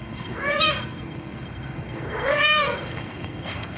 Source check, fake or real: fake